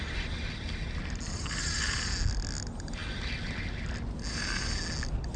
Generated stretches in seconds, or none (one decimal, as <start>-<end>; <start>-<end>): none